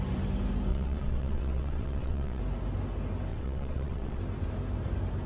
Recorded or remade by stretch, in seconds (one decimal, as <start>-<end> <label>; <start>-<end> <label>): 0.0-0.7 recorded; 0.7-2.4 remade; 2.4-3.3 recorded; 3.3-4.2 remade; 4.2-5.3 recorded